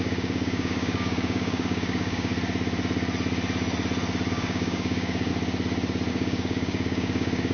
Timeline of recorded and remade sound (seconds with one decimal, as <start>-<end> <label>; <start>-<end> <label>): 0.0-2.3 remade; 2.3-4.3 recorded; 4.3-5.3 remade; 5.3-6.1 recorded; 6.1-7.5 remade